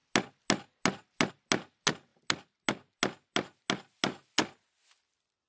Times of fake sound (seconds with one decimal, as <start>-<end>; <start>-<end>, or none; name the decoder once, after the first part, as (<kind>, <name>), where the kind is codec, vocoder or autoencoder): none